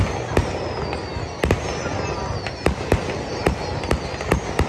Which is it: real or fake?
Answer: real